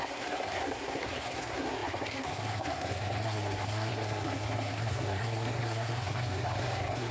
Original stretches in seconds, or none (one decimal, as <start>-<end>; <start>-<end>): none